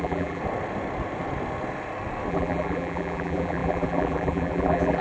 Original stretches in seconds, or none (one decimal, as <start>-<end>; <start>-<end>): 0.4-2.3